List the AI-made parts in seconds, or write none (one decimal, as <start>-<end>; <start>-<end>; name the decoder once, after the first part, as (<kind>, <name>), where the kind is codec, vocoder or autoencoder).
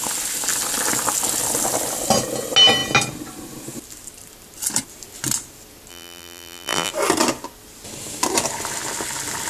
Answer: 5.9-6.9 (vocoder, BigVGAN v2)